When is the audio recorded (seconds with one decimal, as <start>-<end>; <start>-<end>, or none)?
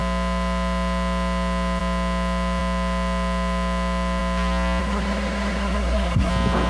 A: 0.0-4.8; 6.3-6.7